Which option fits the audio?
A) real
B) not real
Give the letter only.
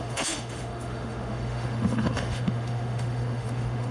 B